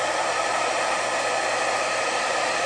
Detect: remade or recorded recorded